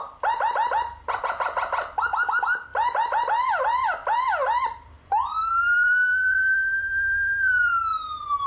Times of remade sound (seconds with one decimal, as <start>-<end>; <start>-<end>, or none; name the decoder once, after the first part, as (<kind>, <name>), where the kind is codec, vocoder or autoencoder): 0.0-4.0 (vocoder, BigVGAN v2); 4.6-8.5

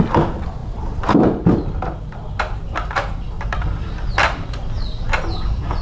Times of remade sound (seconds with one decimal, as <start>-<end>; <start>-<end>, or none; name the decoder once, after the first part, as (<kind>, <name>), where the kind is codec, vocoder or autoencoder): 0.6-4.1 (vocoder, BigVGAN v2)

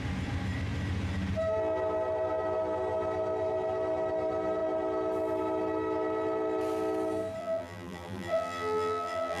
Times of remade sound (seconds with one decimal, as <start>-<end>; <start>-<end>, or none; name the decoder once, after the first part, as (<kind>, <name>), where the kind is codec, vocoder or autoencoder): 7.4-9.4 (vocoder, BigVGAN v2)

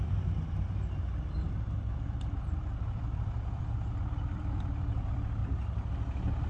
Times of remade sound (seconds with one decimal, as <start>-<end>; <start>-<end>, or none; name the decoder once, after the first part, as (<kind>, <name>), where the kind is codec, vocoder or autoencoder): 0.0-5.4 (vocoder, BigVGAN v2)

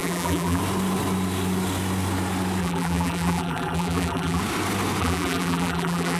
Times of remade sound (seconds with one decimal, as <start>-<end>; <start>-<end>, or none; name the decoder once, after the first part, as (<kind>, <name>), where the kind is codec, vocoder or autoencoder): 0.0-0.6 (vocoder, BigVGAN v2); 2.6-4.4; 5.0-6.2

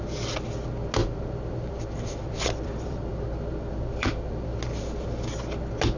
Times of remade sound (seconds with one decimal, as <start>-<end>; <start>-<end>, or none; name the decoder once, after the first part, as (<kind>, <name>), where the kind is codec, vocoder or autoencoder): 1.0-4.6 (vocoder, BigVGAN v2)

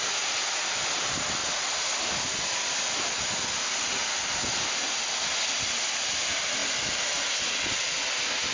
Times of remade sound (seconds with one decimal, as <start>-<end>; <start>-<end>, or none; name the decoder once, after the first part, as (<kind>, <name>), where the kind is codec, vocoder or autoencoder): none

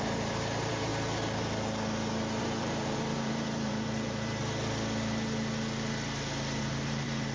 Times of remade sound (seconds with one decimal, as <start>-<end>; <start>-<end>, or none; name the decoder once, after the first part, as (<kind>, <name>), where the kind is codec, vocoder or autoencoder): 0.0-0.9 (vocoder, BigVGAN v2); 2.4-4.4; 6.6-7.3